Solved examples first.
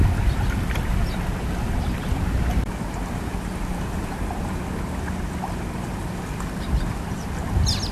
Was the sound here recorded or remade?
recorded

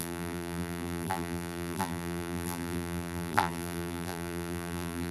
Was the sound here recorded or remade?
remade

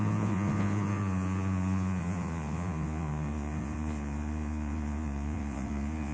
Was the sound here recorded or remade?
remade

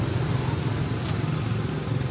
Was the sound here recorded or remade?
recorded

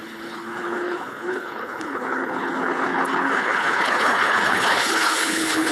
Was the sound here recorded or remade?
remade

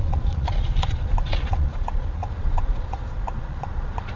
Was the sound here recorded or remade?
remade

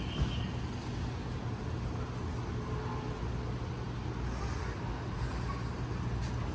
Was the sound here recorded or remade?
recorded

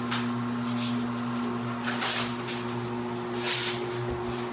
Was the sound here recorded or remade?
recorded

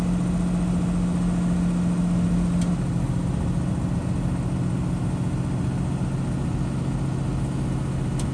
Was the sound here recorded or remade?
recorded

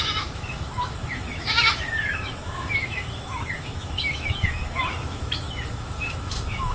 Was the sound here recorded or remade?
remade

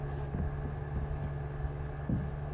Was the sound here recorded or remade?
recorded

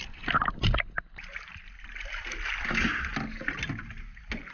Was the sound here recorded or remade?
recorded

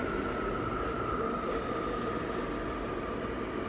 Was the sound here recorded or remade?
recorded